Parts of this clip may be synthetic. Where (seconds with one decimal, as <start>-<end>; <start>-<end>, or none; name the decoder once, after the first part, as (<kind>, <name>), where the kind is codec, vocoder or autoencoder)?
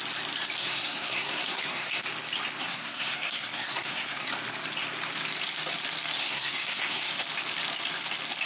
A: 0.6-2.0 (codec, SNAC); 2.6-4.3; 6.2-7.1